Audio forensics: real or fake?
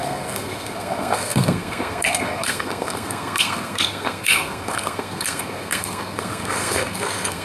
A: fake